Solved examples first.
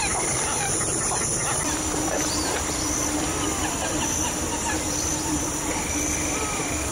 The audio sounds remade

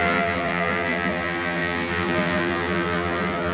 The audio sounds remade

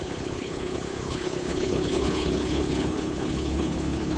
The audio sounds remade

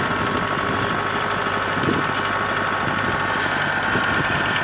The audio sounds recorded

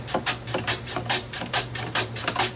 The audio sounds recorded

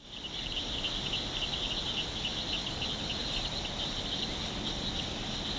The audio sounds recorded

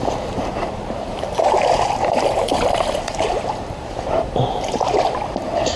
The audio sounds remade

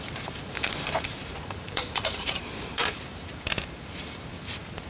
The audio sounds remade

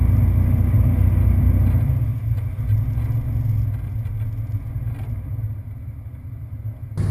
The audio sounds recorded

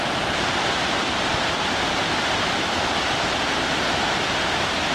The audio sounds recorded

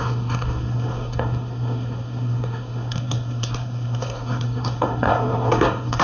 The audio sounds remade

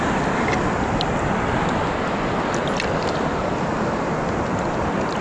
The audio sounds recorded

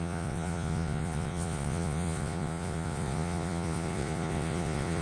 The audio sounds remade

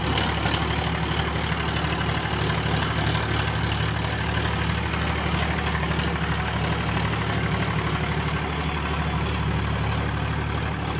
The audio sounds recorded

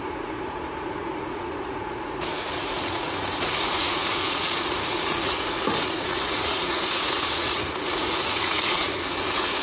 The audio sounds remade